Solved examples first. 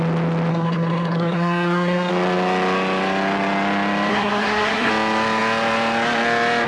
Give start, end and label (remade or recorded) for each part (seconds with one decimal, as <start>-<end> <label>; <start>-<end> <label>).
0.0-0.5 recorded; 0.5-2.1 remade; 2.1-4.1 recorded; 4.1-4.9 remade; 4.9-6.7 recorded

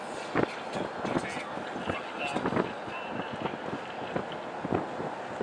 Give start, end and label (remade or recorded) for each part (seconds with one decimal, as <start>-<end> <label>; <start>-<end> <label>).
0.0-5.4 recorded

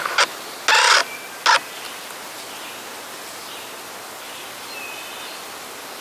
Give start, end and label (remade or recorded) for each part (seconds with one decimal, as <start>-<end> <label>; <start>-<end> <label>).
0.0-6.0 recorded

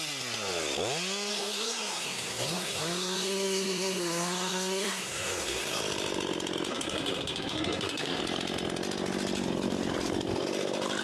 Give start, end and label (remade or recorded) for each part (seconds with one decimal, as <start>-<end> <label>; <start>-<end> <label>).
0.0-1.3 recorded; 1.3-5.8 remade; 5.8-6.7 recorded; 6.7-8.2 remade; 8.2-11.0 recorded